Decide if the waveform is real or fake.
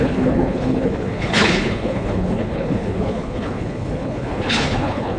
fake